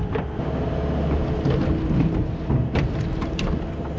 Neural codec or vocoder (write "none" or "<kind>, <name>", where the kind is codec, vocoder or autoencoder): none